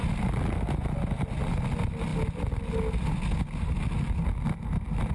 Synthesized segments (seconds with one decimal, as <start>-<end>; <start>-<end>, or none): none